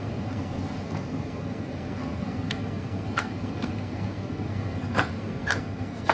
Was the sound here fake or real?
fake